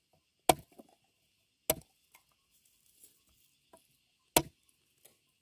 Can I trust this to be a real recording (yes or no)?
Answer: yes